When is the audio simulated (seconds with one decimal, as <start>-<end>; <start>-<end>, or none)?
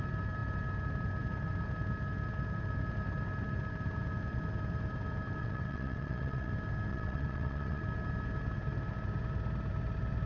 5.4-6.5; 6.9-7.8